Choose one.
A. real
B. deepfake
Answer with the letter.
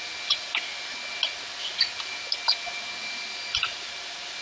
A